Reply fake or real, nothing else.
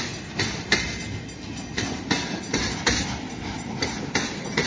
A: real